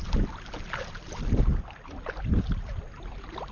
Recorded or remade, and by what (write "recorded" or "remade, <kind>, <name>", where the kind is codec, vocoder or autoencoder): recorded